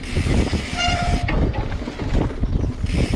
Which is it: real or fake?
real